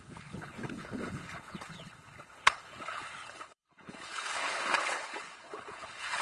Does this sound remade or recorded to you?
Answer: remade